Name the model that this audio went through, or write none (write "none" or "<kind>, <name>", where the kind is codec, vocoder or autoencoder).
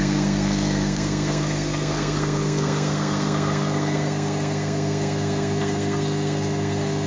codec, SNAC